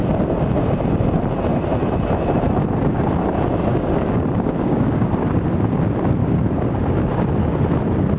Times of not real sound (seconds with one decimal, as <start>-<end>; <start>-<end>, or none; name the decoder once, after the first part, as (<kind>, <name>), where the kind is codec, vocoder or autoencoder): 3.7-5.1 (codec, DAC); 6.2-6.8